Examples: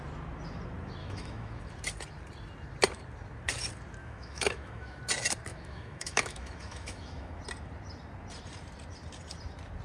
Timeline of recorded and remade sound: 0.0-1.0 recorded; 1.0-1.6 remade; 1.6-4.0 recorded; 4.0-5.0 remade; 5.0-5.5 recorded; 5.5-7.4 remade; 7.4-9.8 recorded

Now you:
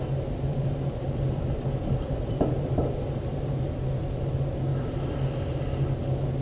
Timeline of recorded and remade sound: 0.0-0.5 recorded; 0.5-4.3 remade; 4.3-6.4 recorded